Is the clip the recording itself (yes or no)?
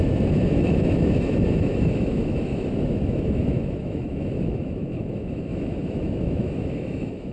no